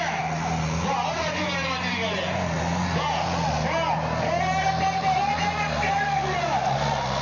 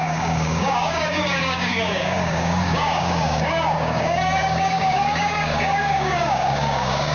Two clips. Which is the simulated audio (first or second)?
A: second